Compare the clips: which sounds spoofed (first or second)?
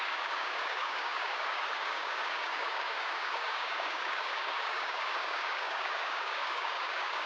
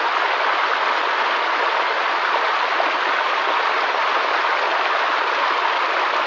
first